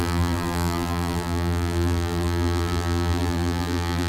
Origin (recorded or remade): remade